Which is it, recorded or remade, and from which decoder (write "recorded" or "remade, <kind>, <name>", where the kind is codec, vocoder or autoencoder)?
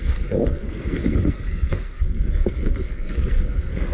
remade, codec, SNAC